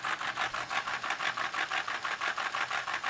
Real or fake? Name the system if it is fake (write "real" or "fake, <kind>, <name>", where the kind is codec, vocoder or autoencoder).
real